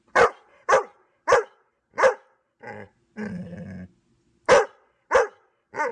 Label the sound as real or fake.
real